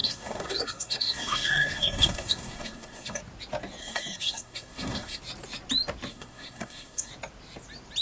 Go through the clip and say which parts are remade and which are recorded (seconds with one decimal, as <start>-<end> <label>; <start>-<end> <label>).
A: 0.0-3.2 remade; 3.2-3.8 recorded; 3.8-5.2 remade; 5.2-6.1 recorded; 6.1-7.1 remade; 7.1-8.0 recorded